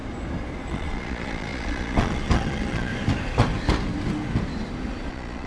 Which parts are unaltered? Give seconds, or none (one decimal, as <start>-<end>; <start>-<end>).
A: 0.0-0.7; 2.9-5.1

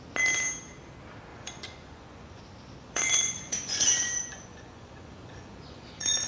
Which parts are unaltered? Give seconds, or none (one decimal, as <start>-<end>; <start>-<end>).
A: 0.0-1.3; 2.4-2.8